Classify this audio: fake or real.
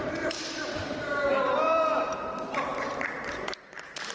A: fake